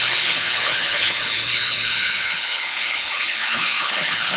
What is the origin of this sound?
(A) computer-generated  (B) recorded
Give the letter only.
A